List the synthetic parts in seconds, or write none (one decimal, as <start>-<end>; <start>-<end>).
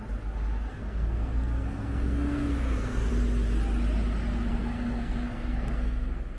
0.7-3.1; 4.5-6.4